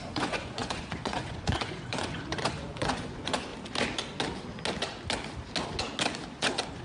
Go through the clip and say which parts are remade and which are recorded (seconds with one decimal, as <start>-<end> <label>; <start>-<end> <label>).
0.0-3.5 remade; 3.5-6.3 recorded; 6.3-6.8 remade